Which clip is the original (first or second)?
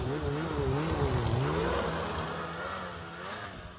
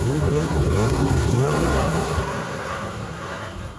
first